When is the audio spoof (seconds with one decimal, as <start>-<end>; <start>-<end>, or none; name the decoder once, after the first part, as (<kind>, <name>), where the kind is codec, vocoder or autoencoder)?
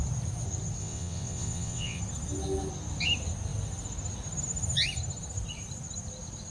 0.8-2.0 (vocoder, WaveNeXt)